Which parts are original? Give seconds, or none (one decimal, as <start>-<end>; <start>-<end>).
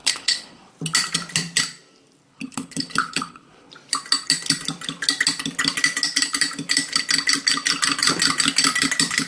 0.7-2.3; 3.7-9.3